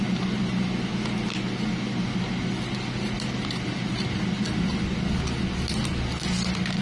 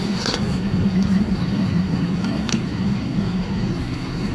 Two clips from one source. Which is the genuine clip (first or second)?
first